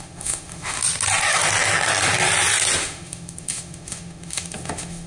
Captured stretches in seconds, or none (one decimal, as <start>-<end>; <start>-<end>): 0.8-2.8